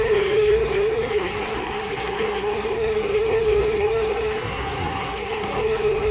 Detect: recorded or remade remade